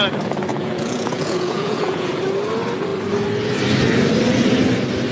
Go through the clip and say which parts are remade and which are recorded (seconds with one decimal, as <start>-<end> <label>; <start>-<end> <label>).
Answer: 0.0-0.5 recorded; 0.5-2.2 remade; 2.2-5.1 recorded